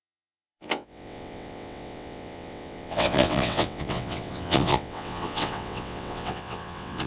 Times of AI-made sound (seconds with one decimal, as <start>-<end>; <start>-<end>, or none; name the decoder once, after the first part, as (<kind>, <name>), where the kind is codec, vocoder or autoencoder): 0.0-7.1 (vocoder, WaveNeXt)